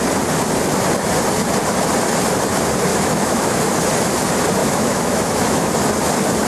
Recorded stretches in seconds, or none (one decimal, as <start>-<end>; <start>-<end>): 0.0-2.9; 3.6-4.6; 5.7-6.5